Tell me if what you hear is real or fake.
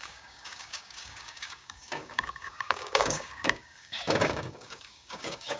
fake